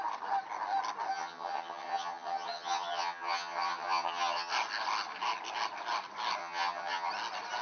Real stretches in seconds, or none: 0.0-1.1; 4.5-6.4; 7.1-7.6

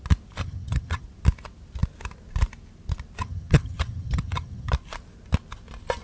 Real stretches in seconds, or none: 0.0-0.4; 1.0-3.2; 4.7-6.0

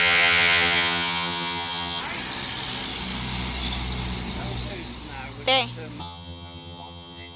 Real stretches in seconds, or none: 2.0-6.0